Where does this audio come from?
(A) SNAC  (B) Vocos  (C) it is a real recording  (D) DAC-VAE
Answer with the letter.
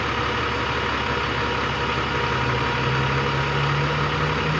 C